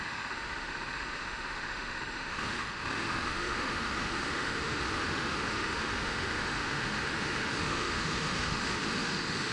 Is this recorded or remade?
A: remade